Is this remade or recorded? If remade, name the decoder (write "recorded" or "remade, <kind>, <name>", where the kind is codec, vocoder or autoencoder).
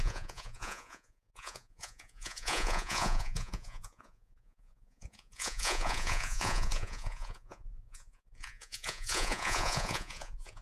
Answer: remade, vocoder, Vocos